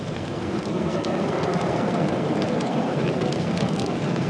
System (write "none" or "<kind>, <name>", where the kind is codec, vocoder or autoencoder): codec, SNAC